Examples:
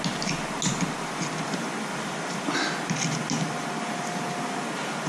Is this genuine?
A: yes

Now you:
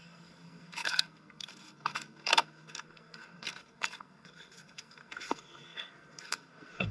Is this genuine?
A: no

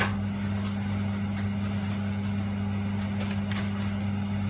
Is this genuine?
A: yes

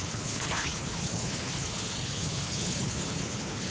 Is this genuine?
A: no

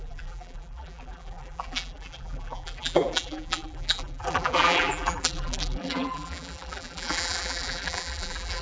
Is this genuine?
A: no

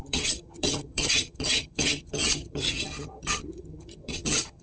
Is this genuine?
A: no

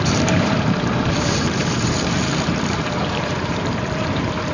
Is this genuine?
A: no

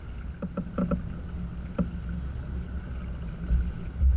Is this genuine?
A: yes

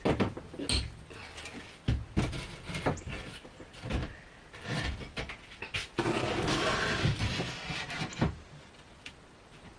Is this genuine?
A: yes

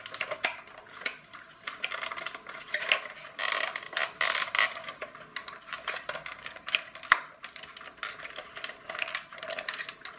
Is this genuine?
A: yes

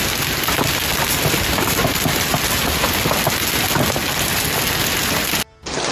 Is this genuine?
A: yes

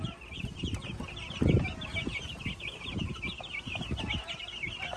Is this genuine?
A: yes